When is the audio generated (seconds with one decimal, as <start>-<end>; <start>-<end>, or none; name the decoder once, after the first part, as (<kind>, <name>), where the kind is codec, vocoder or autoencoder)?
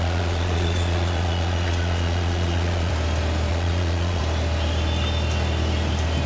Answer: 0.0-2.9 (vocoder, Vocos); 3.5-4.2